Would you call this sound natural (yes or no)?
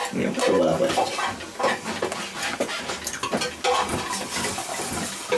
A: yes